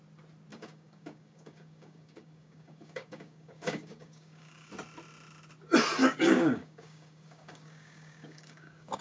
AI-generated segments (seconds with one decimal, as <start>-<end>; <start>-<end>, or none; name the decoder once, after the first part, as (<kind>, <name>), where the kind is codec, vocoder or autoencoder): 0.5-4.7 (codec, DAC); 6.0-9.0